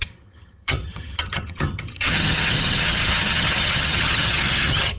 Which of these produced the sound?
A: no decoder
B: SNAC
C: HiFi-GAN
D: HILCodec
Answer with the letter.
C